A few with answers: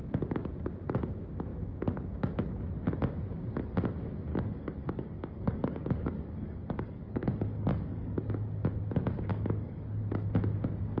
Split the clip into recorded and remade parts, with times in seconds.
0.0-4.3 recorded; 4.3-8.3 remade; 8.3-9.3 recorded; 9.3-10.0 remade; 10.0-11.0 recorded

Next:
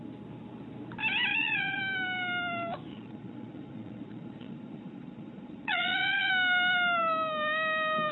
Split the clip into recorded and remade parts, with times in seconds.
0.0-1.3 recorded; 1.3-1.8 remade; 1.8-2.9 recorded; 2.9-6.3 remade; 6.3-8.1 recorded

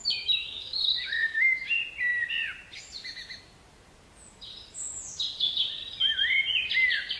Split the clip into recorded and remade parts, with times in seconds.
0.0-1.6 remade; 1.6-7.2 recorded

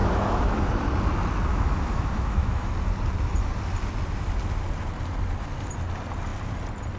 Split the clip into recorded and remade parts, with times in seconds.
0.0-0.7 remade; 0.7-1.5 recorded; 1.5-2.7 remade; 2.7-7.0 recorded

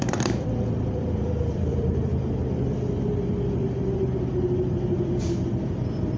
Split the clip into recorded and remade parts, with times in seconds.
0.0-2.4 remade; 2.4-4.2 recorded; 4.2-6.2 remade

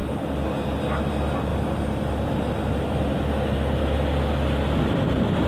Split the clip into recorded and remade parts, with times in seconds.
0.0-5.5 recorded

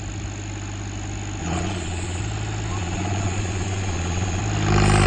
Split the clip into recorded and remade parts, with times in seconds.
0.0-1.4 recorded; 1.4-2.2 remade; 2.2-2.7 recorded; 2.7-4.4 remade; 4.4-5.1 recorded

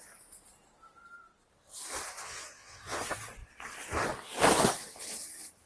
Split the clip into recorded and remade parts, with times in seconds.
0.0-2.2 recorded; 2.2-3.0 remade; 3.0-5.7 recorded